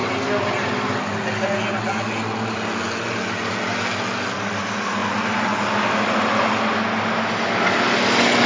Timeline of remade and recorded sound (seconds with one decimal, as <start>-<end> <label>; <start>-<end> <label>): 0.0-8.5 recorded